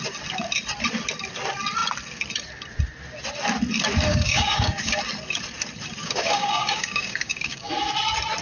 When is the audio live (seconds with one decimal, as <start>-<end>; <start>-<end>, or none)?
0.0-4.1; 5.0-6.0; 7.7-8.4